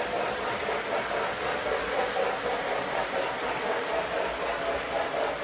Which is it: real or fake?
real